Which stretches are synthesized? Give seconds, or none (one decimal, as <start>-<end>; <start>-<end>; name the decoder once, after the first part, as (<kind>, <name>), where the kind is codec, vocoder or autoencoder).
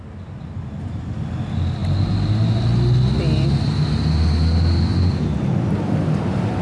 1.8-2.6 (vocoder, BigVGAN v2); 4.9-5.5